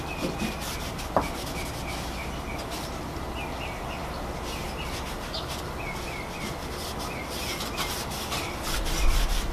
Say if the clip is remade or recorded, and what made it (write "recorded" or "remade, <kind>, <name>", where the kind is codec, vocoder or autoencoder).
recorded